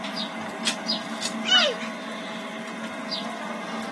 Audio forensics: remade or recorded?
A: recorded